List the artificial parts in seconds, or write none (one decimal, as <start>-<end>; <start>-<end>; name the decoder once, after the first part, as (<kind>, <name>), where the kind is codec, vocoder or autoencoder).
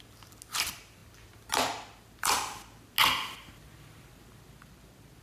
none